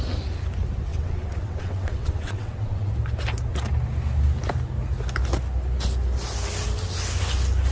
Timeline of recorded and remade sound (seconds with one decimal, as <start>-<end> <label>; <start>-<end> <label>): 0.0-0.9 recorded; 0.9-2.9 remade; 2.9-7.7 recorded